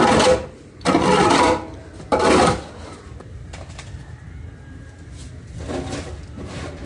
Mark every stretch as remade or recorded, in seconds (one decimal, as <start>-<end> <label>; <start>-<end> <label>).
0.0-6.9 recorded